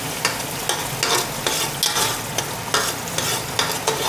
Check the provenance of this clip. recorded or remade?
recorded